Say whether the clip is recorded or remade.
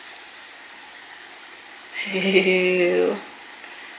recorded